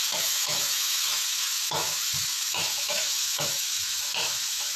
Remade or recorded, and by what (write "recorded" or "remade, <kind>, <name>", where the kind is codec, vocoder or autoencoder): remade, autoencoder, DAC-VAE